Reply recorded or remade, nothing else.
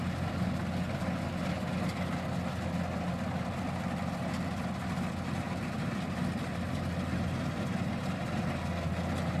recorded